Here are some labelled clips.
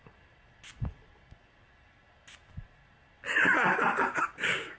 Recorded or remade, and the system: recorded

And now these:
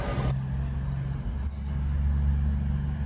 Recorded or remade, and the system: recorded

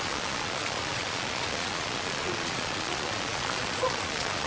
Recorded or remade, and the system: remade, vocoder, Vocos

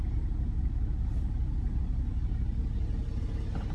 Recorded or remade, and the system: recorded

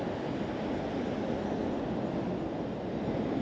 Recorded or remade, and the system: recorded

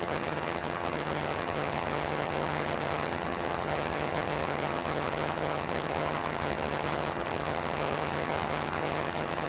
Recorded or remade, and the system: remade, vocoder, HiFi-GAN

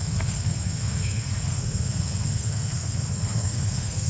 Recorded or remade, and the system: remade, codec, SNAC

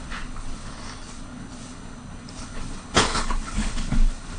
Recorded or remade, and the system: remade, codec, HILCodec